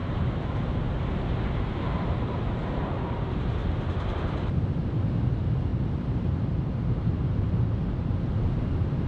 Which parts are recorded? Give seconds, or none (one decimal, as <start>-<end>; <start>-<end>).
0.7-3.6; 4.5-5.7; 7.8-9.1